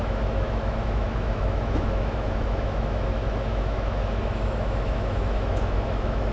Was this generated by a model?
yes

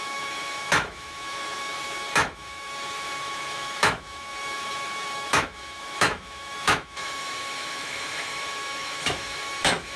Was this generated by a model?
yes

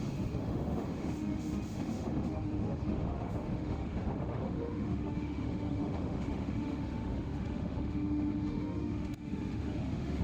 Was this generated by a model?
yes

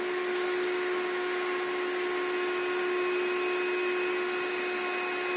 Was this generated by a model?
no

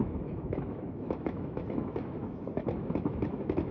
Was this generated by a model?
yes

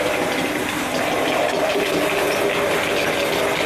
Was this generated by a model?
no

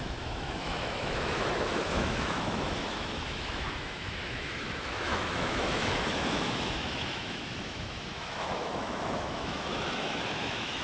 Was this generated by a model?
yes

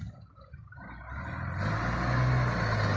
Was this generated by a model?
no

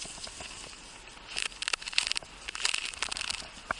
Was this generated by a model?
no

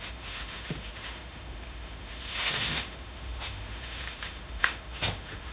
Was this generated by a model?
yes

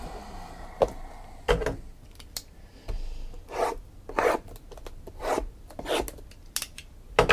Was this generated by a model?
no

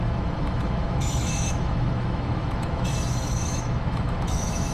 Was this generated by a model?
yes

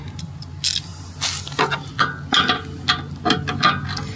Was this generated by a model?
no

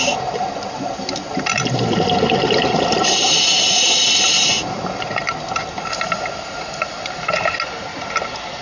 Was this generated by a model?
no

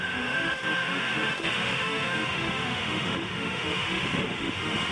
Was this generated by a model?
yes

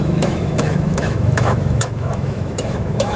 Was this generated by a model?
yes